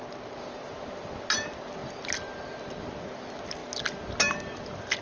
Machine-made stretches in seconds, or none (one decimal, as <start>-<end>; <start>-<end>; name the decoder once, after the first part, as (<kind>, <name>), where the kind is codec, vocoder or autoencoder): none